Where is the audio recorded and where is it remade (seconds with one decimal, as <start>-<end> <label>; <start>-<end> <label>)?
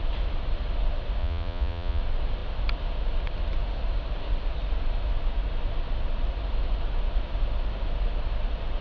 0.0-1.2 recorded; 1.2-2.0 remade; 2.0-8.8 recorded